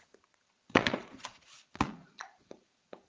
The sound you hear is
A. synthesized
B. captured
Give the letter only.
A